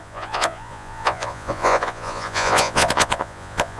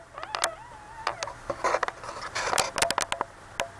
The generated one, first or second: first